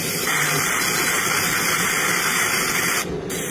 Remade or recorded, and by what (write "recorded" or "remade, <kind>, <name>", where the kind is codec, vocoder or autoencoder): recorded